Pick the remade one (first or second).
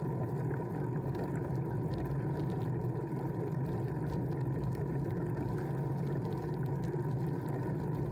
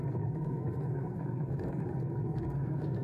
second